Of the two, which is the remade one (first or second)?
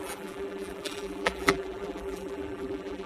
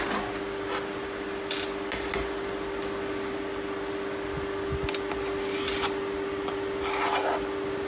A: first